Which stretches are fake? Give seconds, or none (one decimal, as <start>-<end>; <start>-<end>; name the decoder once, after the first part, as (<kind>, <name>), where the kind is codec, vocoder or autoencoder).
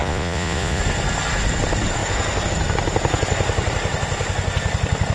0.0-0.8 (vocoder, Vocos)